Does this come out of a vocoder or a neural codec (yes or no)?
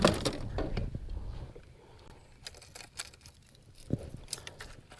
no